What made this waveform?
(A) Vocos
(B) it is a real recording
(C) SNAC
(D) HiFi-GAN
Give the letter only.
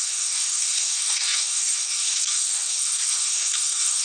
C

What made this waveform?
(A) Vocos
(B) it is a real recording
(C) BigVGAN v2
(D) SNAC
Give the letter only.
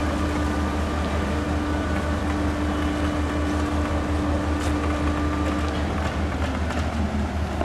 B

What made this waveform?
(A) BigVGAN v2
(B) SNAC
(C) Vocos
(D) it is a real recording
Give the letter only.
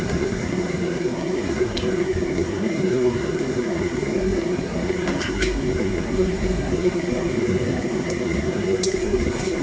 B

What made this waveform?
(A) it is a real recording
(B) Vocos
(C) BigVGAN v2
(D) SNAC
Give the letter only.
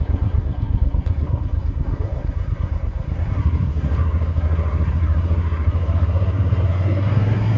D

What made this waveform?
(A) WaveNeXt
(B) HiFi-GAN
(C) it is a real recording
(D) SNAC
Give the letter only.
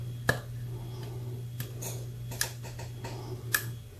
C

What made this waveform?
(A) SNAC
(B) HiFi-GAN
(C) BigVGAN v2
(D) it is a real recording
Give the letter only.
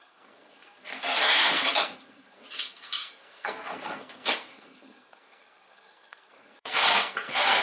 A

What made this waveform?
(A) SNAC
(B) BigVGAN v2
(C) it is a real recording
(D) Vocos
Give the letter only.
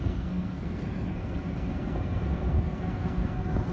A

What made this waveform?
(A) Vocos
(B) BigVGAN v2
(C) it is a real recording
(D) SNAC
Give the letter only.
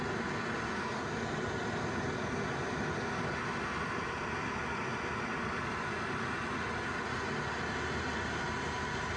C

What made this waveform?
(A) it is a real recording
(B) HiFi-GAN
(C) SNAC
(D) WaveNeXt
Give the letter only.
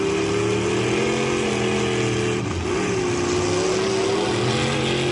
A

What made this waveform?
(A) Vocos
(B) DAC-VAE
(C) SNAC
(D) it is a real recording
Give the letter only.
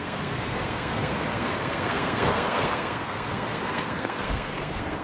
C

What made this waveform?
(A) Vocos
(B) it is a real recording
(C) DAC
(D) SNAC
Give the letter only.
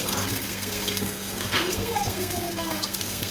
D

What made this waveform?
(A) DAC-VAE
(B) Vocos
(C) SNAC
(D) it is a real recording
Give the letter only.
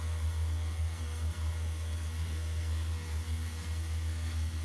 C